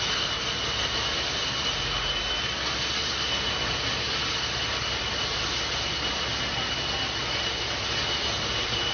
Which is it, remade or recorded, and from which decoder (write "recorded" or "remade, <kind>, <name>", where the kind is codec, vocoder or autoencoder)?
recorded